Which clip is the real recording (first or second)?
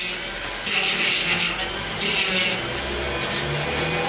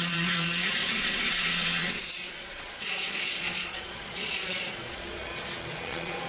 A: first